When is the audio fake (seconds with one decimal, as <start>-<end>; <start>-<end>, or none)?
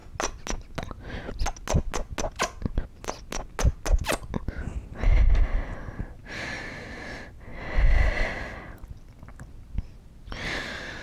none